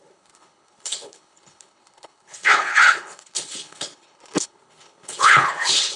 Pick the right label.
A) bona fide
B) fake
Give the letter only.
B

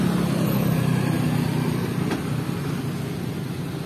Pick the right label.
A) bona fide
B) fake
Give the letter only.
A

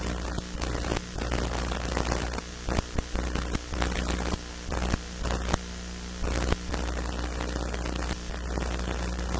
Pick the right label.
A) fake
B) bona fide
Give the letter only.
B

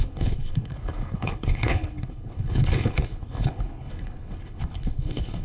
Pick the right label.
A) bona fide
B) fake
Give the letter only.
B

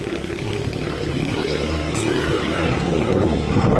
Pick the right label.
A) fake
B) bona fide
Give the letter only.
A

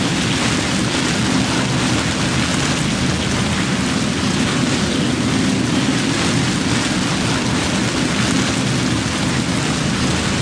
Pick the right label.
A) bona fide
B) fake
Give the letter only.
A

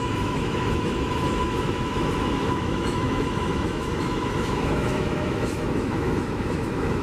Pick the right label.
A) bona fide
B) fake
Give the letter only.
B